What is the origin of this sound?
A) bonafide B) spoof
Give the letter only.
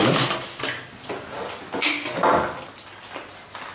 A